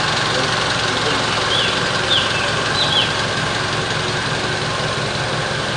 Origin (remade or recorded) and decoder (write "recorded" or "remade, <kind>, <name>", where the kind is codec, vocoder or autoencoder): recorded